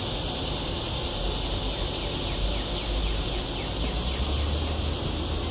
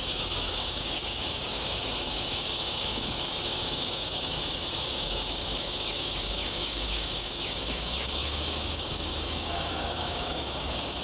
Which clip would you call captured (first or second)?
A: first